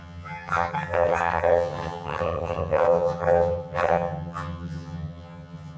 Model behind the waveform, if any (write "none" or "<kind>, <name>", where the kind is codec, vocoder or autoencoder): vocoder, HiFi-GAN